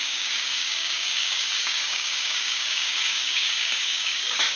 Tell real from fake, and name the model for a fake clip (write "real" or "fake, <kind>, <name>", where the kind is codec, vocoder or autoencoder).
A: fake, codec, DAC